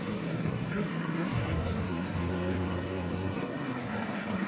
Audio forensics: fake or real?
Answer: fake